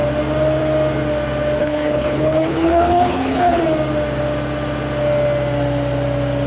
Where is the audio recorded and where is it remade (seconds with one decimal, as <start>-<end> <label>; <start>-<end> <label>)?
0.0-1.6 recorded; 1.6-3.6 remade; 3.6-6.5 recorded